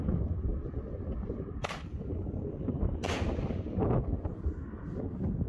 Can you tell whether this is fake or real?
real